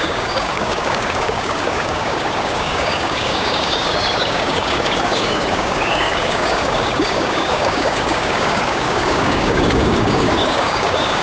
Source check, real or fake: fake